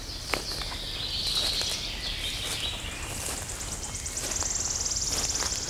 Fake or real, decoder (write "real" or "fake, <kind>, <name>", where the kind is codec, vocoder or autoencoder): real